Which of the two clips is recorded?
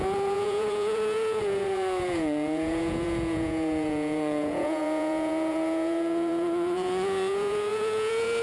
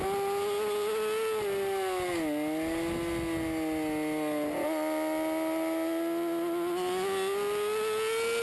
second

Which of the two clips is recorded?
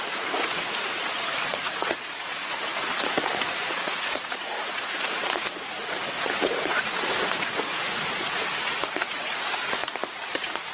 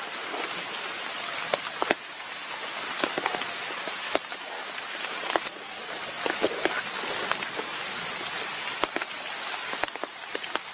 second